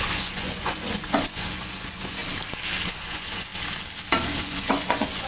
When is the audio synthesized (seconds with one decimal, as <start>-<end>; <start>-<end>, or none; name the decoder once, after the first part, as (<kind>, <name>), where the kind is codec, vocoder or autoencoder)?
0.0-2.2 (vocoder, Vocos); 2.9-3.5; 4.4-5.3